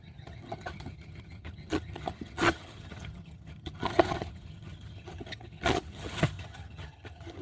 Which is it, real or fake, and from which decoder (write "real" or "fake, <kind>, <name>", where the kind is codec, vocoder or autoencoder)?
fake, vocoder, HiFi-GAN